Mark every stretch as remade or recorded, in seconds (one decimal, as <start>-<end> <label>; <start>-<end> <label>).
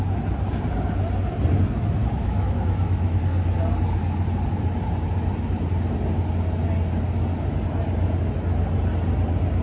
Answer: 0.0-2.0 recorded; 2.0-3.2 remade; 3.2-9.6 recorded